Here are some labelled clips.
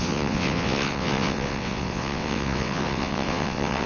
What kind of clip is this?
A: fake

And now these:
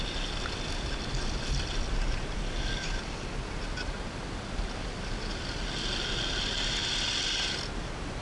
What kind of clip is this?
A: real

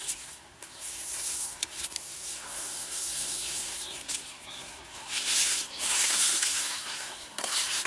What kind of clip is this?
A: fake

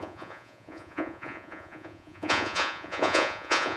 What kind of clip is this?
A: fake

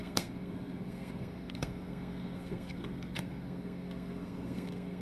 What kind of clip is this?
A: fake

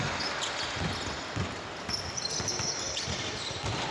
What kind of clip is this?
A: real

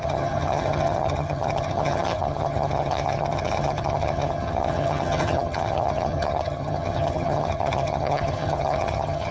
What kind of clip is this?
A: fake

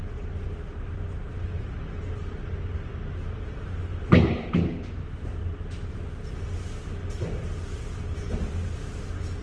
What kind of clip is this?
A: real